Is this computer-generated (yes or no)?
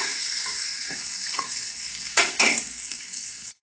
yes